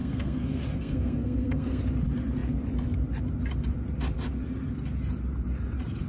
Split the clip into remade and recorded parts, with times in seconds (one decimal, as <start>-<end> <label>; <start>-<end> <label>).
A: 0.0-1.8 remade; 1.8-6.1 recorded